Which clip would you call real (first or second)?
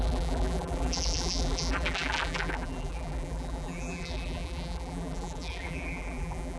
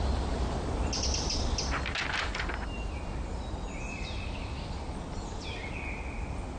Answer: second